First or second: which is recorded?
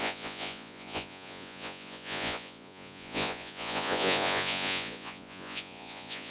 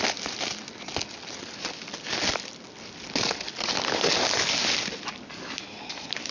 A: second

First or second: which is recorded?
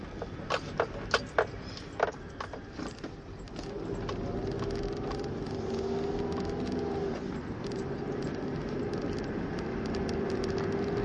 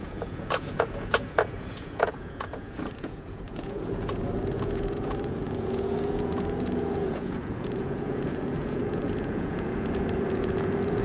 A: first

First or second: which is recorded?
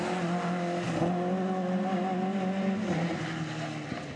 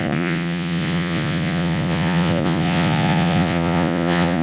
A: first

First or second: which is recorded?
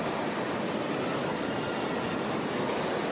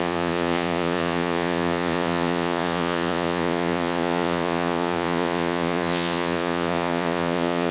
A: first